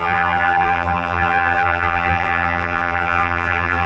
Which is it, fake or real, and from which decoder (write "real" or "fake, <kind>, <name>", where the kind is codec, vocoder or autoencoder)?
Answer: fake, vocoder, BigVGAN v2